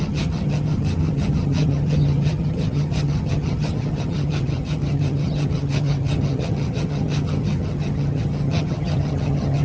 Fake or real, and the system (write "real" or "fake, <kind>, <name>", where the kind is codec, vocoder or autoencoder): fake, vocoder, HiFi-GAN